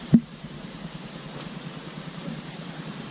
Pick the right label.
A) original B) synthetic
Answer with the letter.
B